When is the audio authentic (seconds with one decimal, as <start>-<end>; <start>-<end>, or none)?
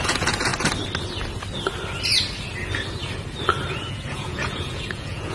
0.5-3.7